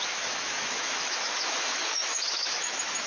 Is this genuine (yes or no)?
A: no